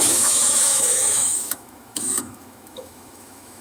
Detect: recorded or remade remade